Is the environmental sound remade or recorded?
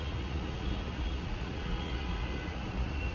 remade